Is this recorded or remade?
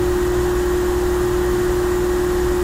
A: recorded